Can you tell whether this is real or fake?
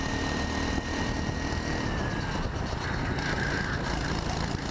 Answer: real